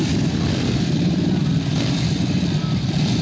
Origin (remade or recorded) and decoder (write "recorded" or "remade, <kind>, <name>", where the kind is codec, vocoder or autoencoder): remade, vocoder, BigVGAN v2